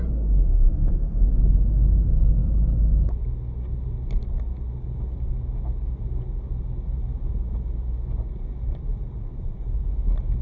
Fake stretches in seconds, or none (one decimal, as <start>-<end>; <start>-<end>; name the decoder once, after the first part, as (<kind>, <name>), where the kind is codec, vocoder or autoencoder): 0.5-1.3 (codec, SNAC)